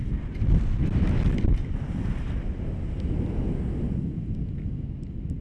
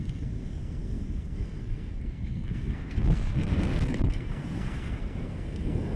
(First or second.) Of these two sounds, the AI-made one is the second